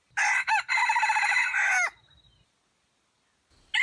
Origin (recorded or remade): recorded